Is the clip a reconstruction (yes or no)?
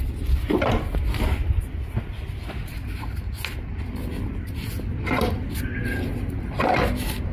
no